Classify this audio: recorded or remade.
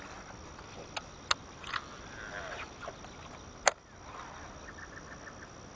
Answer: recorded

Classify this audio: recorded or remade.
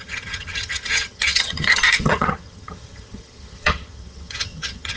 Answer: remade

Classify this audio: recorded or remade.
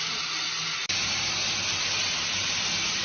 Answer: recorded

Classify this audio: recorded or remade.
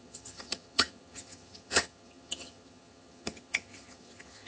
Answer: remade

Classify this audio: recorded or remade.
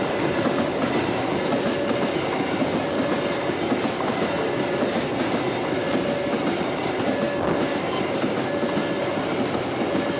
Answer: recorded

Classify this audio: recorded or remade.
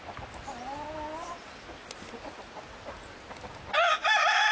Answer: recorded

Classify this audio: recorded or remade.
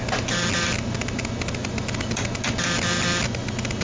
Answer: recorded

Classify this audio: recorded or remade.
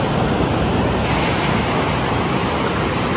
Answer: recorded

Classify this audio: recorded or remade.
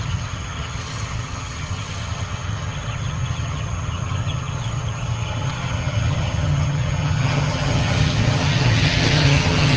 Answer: remade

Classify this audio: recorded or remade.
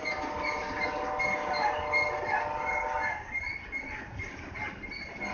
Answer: recorded